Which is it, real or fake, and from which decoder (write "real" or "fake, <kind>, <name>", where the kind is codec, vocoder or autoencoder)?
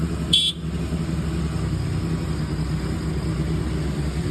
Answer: real